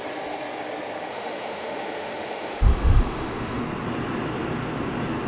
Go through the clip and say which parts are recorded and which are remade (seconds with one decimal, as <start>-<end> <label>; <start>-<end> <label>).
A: 0.0-1.1 recorded; 1.1-3.6 remade; 3.6-5.3 recorded